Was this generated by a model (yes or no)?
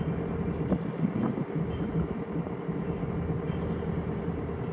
no